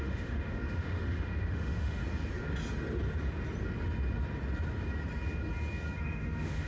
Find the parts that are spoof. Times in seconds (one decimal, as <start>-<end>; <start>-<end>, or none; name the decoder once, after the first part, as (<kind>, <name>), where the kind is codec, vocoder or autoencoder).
0.0-2.0 (autoencoder, DAC-VAE); 6.0-6.7